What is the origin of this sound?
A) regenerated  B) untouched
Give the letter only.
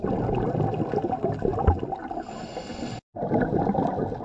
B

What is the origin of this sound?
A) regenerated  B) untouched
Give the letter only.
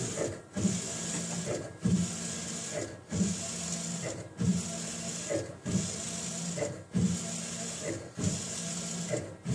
B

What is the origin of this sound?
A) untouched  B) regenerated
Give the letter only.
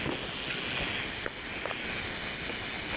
A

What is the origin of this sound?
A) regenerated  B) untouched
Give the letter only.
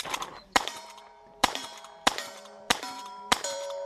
A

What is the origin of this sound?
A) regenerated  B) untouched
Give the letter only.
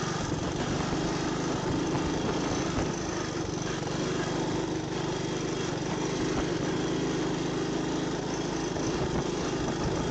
B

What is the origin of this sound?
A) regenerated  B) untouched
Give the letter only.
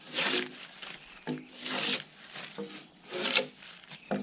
B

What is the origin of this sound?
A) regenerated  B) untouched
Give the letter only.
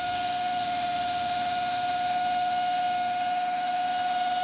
A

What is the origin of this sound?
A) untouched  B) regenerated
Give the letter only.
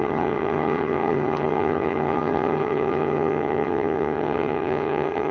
B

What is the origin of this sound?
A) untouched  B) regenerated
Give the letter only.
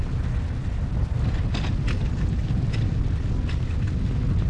A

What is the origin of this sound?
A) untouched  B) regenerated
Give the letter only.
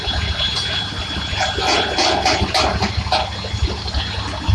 A